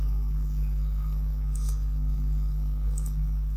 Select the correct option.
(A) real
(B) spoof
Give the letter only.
B